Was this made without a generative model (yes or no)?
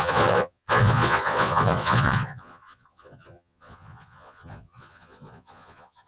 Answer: no